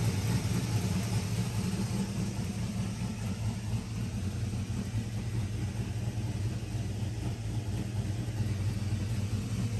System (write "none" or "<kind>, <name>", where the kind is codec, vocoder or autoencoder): none